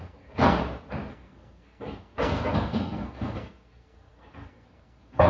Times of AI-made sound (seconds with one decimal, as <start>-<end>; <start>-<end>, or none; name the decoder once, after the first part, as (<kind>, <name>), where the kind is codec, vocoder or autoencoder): 0.0-0.6 (codec, SNAC); 1.1-5.3